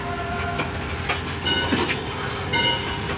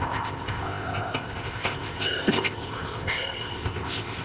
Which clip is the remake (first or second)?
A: second